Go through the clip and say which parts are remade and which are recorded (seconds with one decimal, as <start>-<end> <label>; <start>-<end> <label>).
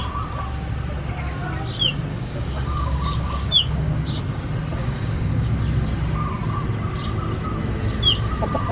0.0-2.1 recorded; 2.1-4.2 remade; 4.2-4.8 recorded; 4.8-5.5 remade; 5.5-8.7 recorded